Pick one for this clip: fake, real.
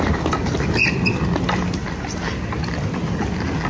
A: real